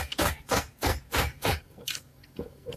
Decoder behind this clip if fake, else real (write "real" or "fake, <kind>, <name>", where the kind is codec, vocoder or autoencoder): fake, codec, SNAC